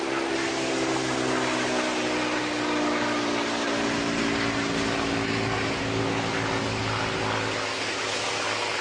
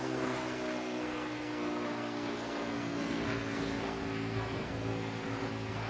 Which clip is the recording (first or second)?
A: first